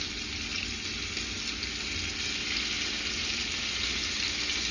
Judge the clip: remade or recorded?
recorded